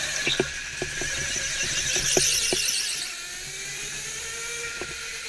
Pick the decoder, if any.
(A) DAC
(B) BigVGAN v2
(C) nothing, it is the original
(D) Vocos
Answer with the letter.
C